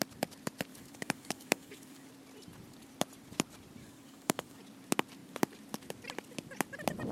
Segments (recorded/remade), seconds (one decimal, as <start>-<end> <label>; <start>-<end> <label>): 0.0-0.7 recorded; 0.7-2.1 remade; 2.1-3.8 recorded; 3.8-4.6 remade; 4.6-7.1 recorded